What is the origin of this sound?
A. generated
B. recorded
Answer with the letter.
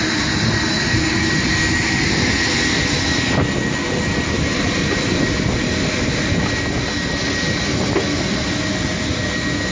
B